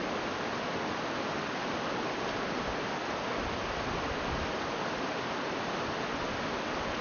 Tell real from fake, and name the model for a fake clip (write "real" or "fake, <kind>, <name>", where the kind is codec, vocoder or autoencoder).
real